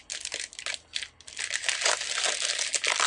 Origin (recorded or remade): recorded